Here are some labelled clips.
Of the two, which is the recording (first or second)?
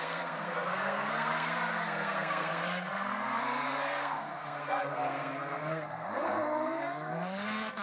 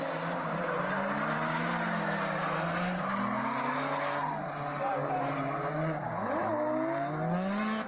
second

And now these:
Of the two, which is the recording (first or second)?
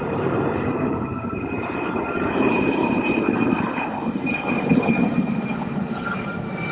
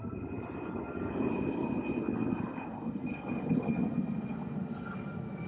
second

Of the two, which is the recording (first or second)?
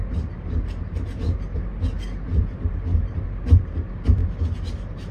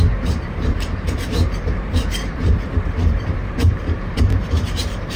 first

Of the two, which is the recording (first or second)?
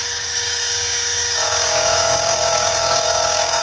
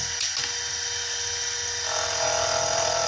second